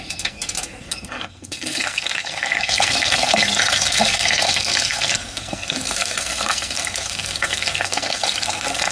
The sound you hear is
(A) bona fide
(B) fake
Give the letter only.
B